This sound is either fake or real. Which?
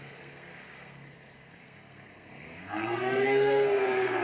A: fake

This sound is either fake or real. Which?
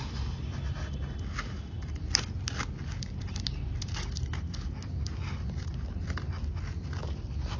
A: real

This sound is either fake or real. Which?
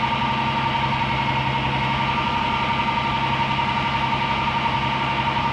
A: real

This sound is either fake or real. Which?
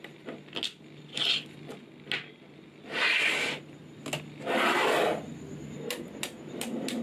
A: real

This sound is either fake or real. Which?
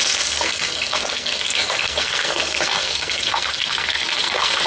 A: fake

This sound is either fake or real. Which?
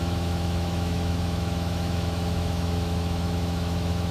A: fake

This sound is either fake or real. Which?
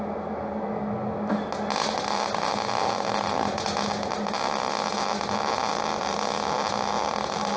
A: real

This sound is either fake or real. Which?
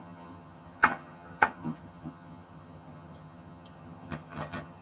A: fake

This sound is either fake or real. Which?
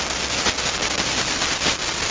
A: real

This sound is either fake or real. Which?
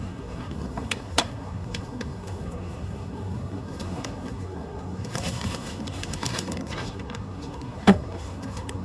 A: fake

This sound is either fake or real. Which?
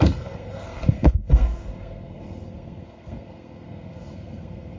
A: fake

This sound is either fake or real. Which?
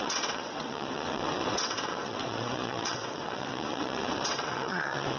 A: fake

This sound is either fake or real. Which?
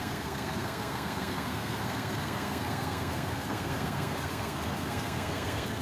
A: fake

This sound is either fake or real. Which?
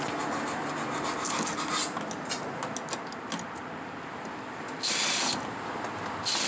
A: real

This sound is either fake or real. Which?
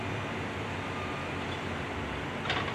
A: real